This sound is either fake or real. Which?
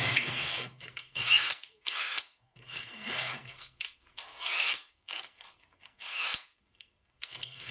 fake